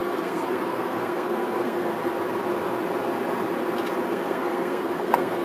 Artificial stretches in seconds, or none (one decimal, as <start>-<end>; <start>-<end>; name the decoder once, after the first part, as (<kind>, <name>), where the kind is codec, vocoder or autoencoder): 0.0-1.9 (codec, SNAC); 4.1-5.4